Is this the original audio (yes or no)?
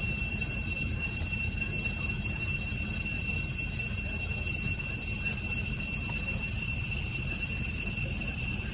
no